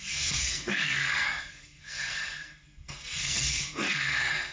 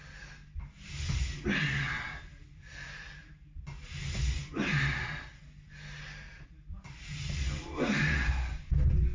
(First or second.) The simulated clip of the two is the first